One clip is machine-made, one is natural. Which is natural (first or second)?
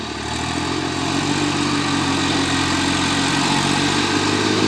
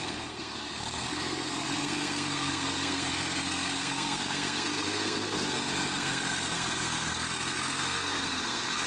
first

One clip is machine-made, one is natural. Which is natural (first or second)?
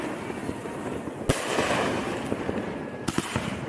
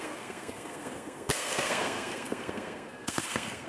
first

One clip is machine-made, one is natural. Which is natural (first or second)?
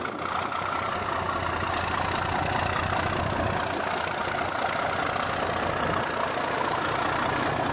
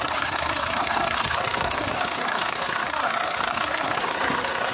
first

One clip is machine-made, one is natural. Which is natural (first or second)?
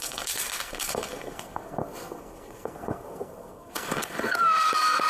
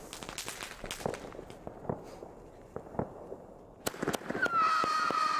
second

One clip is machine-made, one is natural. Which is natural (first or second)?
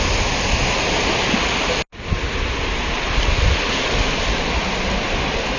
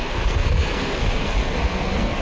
first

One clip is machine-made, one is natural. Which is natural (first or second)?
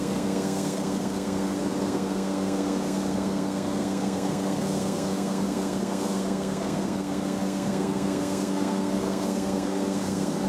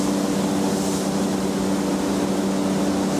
second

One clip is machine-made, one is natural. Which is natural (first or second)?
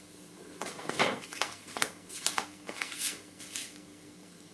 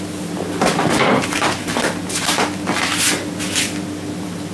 second